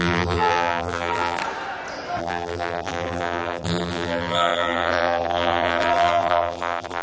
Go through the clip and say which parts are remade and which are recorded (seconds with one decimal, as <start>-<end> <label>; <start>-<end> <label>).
0.0-1.4 remade; 1.4-2.2 recorded; 2.2-7.0 remade

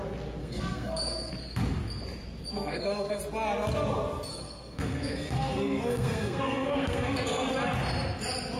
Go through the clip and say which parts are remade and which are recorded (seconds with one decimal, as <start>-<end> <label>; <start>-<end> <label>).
0.0-0.4 recorded; 0.4-1.3 remade; 1.3-2.5 recorded; 2.5-3.2 remade; 3.2-4.3 recorded; 4.3-7.5 remade; 7.5-8.6 recorded

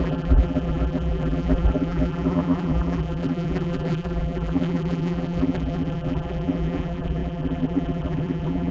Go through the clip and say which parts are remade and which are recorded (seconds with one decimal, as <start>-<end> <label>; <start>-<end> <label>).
0.0-8.7 remade

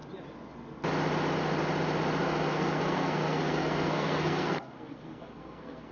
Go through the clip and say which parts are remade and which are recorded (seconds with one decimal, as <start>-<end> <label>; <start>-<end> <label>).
0.0-2.2 recorded; 2.2-5.9 remade